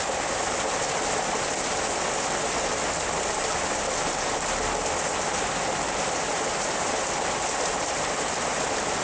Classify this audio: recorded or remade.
recorded